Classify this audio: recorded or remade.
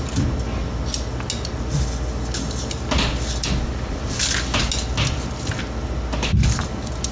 recorded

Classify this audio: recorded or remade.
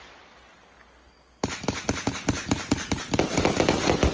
recorded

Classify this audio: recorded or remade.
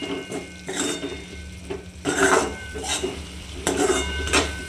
remade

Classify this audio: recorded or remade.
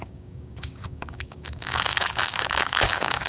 remade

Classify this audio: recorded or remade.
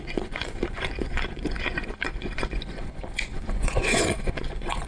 remade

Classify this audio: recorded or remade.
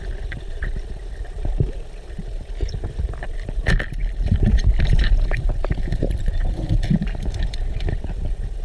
remade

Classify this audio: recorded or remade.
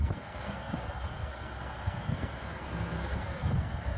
remade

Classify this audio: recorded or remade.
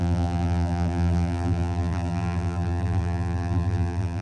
remade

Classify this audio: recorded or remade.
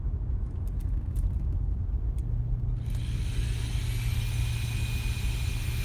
recorded